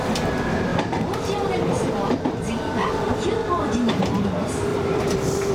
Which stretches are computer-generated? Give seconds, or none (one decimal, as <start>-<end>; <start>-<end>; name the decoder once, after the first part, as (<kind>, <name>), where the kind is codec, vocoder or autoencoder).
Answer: 0.7-4.0 (vocoder, BigVGAN v2); 4.7-5.5